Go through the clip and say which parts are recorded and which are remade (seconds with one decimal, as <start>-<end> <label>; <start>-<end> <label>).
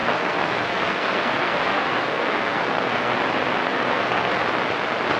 0.0-3.1 remade; 3.1-3.6 recorded; 3.6-4.3 remade; 4.3-5.2 recorded